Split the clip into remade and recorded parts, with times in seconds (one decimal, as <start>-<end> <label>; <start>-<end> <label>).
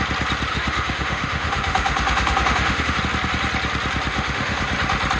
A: 0.0-0.5 recorded; 0.5-3.0 remade; 3.0-4.1 recorded; 4.1-4.6 remade; 4.6-5.2 recorded